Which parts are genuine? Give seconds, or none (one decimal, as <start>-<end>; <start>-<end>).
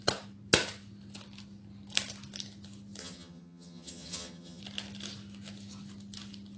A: 0.0-3.0; 4.6-6.6